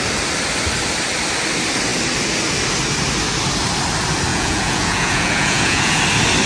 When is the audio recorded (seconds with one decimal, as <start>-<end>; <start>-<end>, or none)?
0.0-4.3; 6.0-6.5